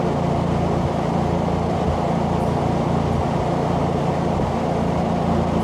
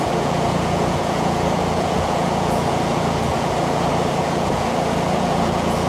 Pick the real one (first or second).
first